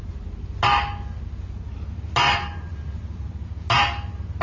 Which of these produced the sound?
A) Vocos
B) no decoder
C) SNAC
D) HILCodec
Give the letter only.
B